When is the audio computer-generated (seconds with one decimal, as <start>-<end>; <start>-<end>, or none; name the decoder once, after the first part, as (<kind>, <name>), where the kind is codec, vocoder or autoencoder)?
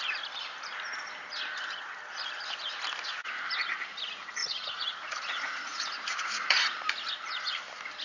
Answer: 4.4-6.9 (vocoder, Vocos)